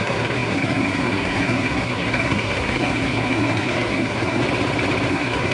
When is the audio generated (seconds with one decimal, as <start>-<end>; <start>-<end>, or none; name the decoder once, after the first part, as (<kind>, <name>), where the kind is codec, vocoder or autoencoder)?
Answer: 0.0-4.4 (codec, SNAC); 5.1-5.5